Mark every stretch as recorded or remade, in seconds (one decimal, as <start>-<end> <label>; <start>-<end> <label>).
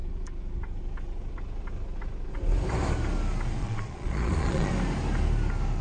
0.0-3.6 recorded; 3.6-4.7 remade; 4.7-5.8 recorded